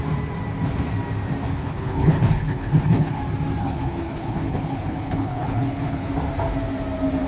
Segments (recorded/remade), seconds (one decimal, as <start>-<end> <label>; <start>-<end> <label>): 0.0-1.5 recorded; 1.5-3.2 remade; 3.2-3.6 recorded; 3.6-6.1 remade; 6.1-7.3 recorded